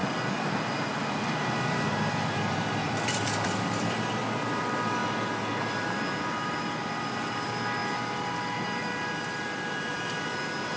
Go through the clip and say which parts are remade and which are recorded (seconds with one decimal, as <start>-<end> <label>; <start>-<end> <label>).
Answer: 0.0-1.1 recorded; 1.1-5.0 remade; 5.0-6.5 recorded; 6.5-10.8 remade